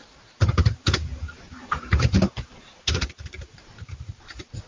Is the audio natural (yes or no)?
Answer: no